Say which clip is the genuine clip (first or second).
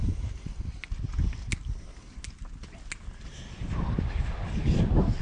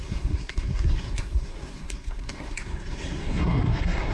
first